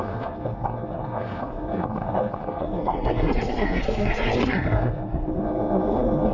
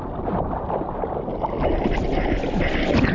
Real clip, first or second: second